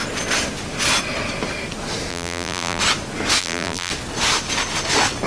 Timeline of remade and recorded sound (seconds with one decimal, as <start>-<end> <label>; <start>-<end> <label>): 0.0-2.1 recorded; 2.1-2.8 remade; 2.8-3.4 recorded; 3.4-3.9 remade; 3.9-5.3 recorded